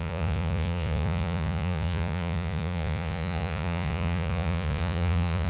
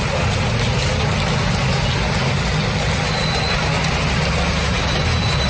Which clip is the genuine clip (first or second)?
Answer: second